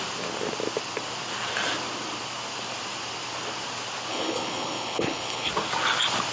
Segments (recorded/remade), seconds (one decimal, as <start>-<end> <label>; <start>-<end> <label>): 0.0-4.1 recorded; 4.1-5.5 remade; 5.5-6.3 recorded